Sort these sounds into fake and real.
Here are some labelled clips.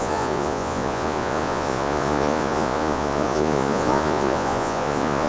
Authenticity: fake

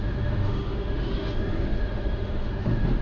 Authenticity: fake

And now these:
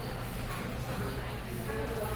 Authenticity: real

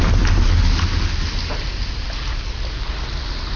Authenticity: real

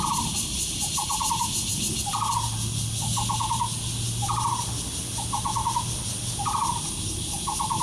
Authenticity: real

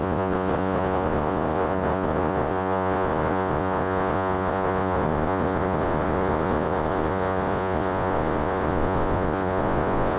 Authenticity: fake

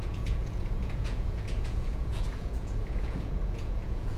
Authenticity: fake